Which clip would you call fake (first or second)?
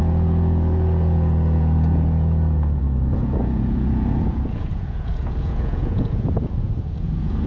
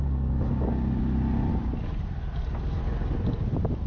first